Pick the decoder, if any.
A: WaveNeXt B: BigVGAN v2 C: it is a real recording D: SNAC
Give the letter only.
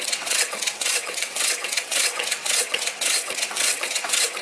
A